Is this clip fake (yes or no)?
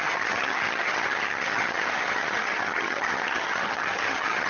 yes